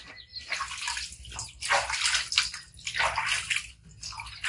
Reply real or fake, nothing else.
real